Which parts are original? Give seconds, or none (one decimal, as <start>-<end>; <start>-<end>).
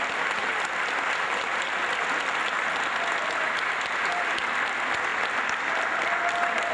0.0-6.7